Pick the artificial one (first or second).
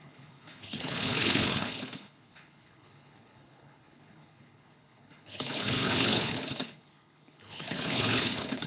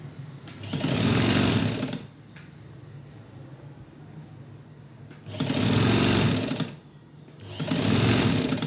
first